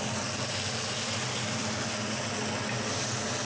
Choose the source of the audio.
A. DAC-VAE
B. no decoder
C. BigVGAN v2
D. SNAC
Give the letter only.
B